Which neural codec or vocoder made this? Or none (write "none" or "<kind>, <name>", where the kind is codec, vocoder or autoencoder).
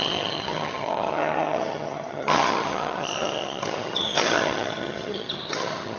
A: vocoder, HiFi-GAN